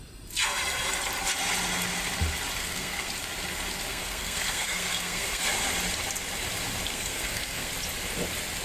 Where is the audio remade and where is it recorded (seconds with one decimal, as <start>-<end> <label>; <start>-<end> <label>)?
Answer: 0.0-2.6 recorded; 2.6-3.1 remade; 3.1-3.9 recorded; 3.9-5.5 remade; 5.5-6.9 recorded; 6.9-7.7 remade; 7.7-8.6 recorded